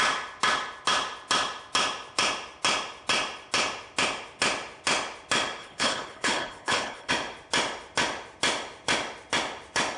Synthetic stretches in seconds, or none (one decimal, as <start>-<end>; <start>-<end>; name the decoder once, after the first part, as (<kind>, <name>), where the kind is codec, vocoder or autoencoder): 5.6-7.1 (codec, HILCodec)